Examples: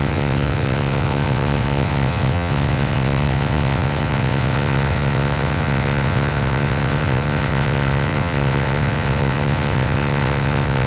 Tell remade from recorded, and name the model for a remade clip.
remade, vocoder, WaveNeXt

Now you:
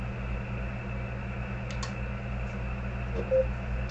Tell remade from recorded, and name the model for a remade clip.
recorded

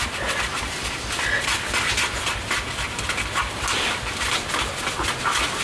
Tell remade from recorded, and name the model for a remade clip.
recorded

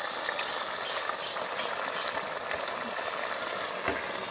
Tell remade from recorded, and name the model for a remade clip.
recorded